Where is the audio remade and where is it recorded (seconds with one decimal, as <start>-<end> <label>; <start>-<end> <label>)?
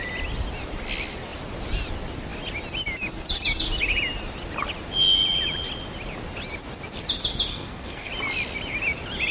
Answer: 0.0-7.5 recorded; 7.5-8.1 remade; 8.1-9.3 recorded